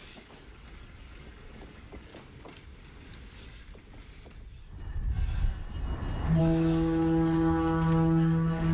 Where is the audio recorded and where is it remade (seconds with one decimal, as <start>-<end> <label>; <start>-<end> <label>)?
0.0-2.1 remade; 2.1-6.4 recorded; 6.4-8.7 remade